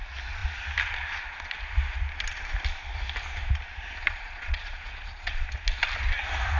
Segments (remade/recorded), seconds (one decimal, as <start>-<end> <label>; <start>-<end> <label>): 0.0-4.0 recorded; 4.0-5.3 remade; 5.3-6.6 recorded